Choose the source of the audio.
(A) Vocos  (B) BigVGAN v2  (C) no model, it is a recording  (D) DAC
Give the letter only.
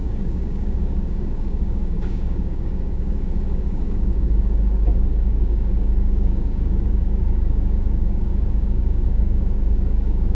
D